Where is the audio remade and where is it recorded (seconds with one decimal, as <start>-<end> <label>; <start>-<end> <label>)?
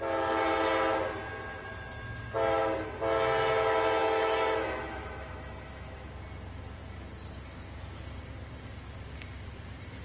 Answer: 0.0-4.0 recorded; 4.0-6.1 remade; 6.1-10.0 recorded